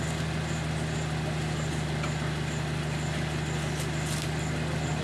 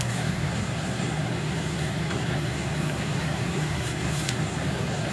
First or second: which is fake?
second